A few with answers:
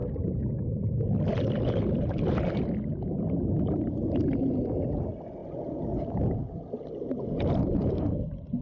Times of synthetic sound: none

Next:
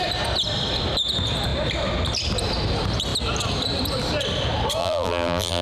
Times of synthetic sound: 4.8-5.6 (vocoder, BigVGAN v2)

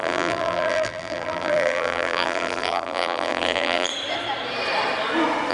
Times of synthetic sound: 0.0-3.9 (vocoder, BigVGAN v2)